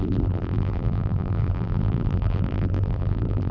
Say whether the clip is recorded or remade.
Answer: remade